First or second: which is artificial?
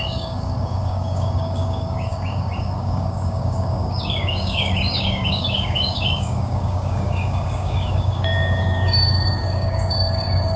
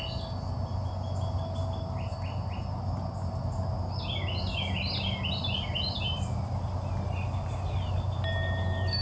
first